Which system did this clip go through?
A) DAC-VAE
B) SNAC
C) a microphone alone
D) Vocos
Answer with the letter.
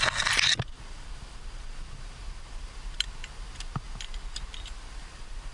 C